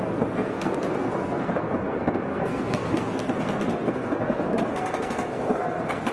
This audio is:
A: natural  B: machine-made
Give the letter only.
B